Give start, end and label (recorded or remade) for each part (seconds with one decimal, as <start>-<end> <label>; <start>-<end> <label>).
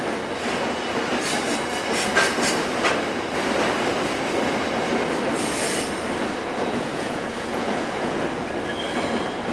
0.0-6.5 recorded; 6.5-8.2 remade; 8.2-9.5 recorded